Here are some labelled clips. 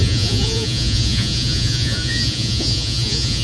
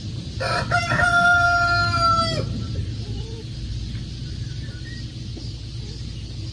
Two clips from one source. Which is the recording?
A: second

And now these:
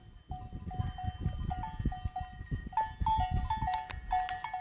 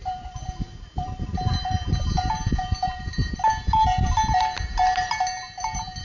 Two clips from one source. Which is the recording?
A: first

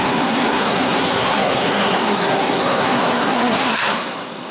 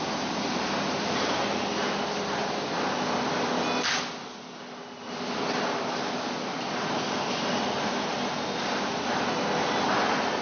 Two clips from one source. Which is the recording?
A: second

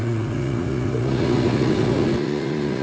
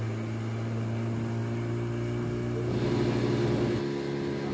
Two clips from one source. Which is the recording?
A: second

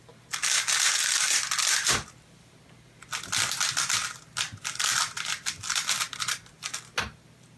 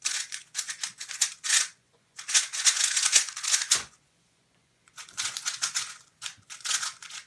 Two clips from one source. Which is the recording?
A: first